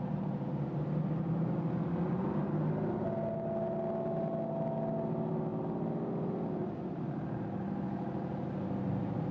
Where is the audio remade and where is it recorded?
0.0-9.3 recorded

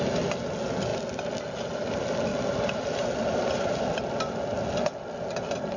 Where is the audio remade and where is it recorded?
0.0-5.8 recorded

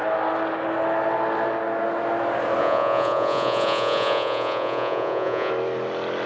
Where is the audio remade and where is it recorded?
0.0-2.6 recorded; 2.6-5.5 remade; 5.5-6.3 recorded

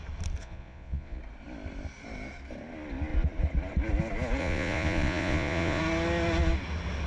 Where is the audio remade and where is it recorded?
0.0-0.4 recorded; 0.4-1.2 remade; 1.2-4.4 recorded; 4.4-5.8 remade; 5.8-7.1 recorded

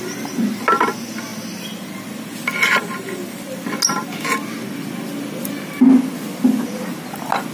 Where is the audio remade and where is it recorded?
0.0-7.5 recorded

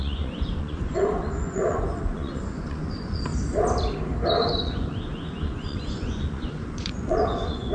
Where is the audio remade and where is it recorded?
0.0-3.3 remade; 3.3-4.5 recorded; 4.5-7.7 remade